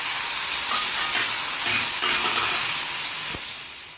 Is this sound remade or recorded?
recorded